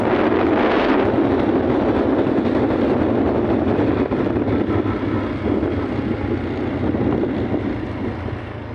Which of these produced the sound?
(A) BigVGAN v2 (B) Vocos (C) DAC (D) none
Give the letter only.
D